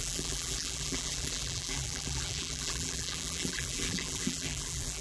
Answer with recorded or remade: remade